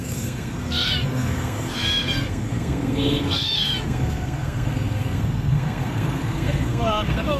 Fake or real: fake